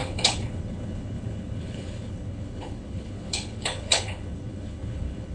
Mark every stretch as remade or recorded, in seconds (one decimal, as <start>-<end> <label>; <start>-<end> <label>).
0.0-5.3 remade